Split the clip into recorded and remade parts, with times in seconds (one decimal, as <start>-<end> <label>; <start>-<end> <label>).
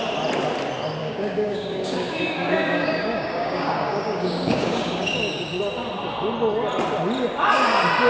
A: 0.0-1.0 recorded; 1.0-5.6 remade; 5.6-8.1 recorded